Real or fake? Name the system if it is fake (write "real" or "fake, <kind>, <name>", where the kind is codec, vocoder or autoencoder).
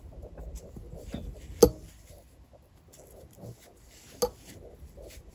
real